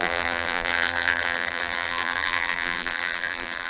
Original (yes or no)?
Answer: no